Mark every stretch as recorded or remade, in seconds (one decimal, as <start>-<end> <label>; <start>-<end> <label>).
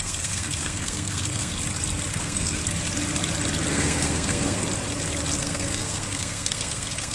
0.0-1.5 remade; 1.5-2.1 recorded; 2.1-2.6 remade; 2.6-3.7 recorded; 3.7-4.6 remade; 4.6-5.4 recorded; 5.4-7.1 remade